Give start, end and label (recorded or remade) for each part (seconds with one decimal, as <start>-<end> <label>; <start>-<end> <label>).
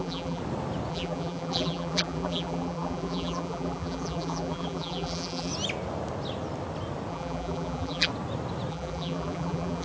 0.0-0.4 remade; 0.4-0.9 recorded; 0.9-5.5 remade; 5.5-7.1 recorded; 7.1-8.1 remade; 8.1-8.7 recorded; 8.7-9.8 remade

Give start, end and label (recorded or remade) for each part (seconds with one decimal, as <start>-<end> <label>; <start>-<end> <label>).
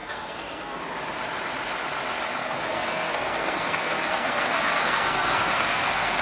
0.0-0.8 remade; 0.8-2.4 recorded; 2.4-6.2 remade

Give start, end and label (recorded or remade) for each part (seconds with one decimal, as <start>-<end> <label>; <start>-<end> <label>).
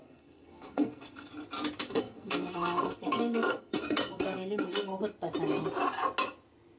0.0-1.3 remade; 1.3-1.8 recorded; 1.8-4.9 remade; 4.9-6.8 recorded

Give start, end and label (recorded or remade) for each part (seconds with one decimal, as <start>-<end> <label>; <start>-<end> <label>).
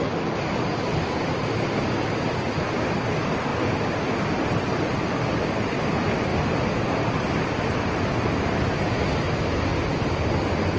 0.0-6.3 recorded; 6.3-7.0 remade; 7.0-9.7 recorded; 9.7-10.8 remade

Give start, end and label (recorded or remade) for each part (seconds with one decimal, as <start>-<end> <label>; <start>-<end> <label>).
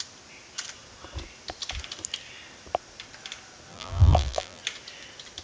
0.0-3.7 recorded; 3.7-4.6 remade; 4.6-5.4 recorded